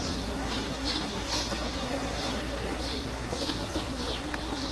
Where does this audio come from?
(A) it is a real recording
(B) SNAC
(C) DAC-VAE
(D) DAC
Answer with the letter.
B